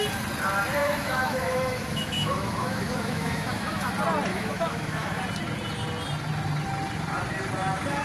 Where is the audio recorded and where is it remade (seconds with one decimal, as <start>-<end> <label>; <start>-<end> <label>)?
0.0-0.8 recorded; 0.8-3.9 remade; 3.9-4.3 recorded; 4.3-5.2 remade; 5.2-8.0 recorded